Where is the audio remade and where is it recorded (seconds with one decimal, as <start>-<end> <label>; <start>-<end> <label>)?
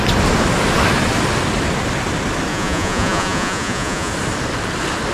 0.0-2.5 recorded; 2.5-4.1 remade; 4.1-5.1 recorded